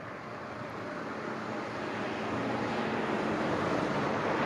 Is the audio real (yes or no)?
yes